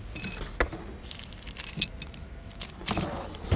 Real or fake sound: real